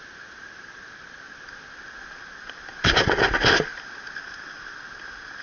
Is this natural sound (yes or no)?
yes